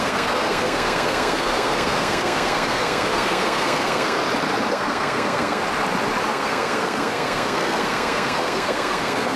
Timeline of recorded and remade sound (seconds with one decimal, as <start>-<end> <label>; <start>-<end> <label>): 0.0-4.2 remade; 4.2-4.7 recorded; 4.7-5.6 remade; 5.6-6.3 recorded; 6.3-9.4 remade